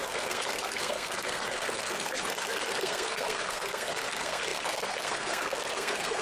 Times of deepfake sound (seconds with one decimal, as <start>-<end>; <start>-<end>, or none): 0.0-6.2